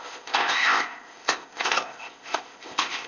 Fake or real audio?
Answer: fake